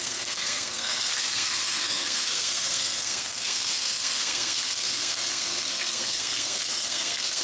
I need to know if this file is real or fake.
fake